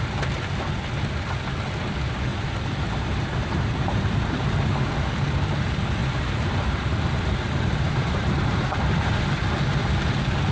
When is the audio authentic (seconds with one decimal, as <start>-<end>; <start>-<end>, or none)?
0.0-2.3; 4.5-6.0; 9.2-10.5